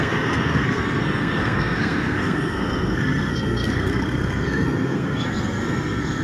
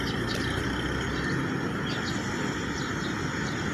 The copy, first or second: first